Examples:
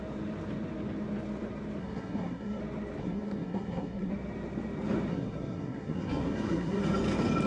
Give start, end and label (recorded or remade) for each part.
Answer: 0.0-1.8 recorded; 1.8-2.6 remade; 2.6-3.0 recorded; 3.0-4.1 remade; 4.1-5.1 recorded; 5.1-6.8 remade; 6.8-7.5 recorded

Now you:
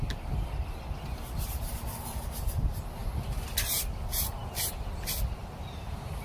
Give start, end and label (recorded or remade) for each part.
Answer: 0.0-6.2 recorded